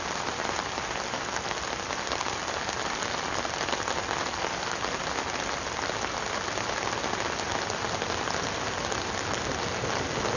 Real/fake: real